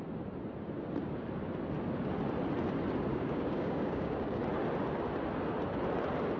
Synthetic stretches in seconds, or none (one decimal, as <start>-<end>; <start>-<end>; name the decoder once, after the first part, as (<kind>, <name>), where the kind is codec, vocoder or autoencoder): 3.1-4.4 (codec, DAC)